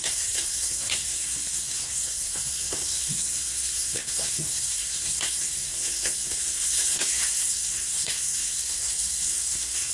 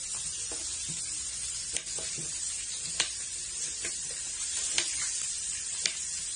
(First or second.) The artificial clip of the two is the first